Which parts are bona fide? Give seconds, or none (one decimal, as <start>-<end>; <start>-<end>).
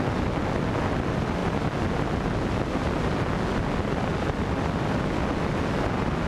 0.0-6.3